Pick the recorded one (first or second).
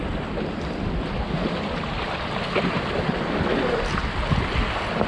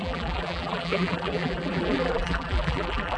first